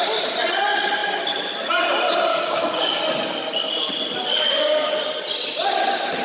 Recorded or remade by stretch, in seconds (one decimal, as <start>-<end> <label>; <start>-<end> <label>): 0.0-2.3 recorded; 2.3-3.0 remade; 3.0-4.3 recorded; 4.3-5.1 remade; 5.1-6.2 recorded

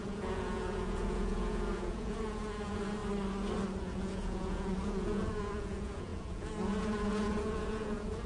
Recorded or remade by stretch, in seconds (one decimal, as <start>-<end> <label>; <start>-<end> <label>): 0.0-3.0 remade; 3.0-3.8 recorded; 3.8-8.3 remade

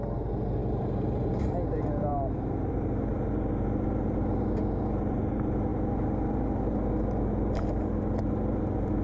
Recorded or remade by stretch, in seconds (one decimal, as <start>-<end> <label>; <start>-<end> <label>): 0.0-9.0 recorded

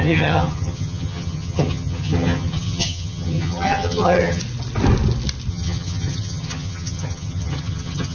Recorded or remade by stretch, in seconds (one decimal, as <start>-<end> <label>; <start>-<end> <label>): 0.0-4.4 remade; 4.4-5.5 recorded; 5.5-8.1 remade

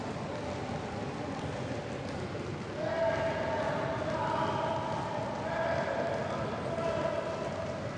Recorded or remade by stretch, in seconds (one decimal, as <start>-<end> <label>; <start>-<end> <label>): 0.0-8.0 recorded